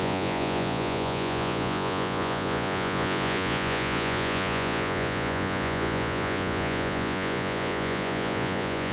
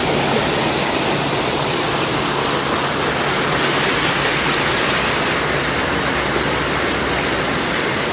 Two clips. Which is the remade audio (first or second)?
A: first